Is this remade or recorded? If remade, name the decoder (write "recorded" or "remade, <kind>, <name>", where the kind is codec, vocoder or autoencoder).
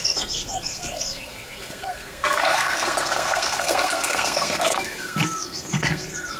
remade, codec, SNAC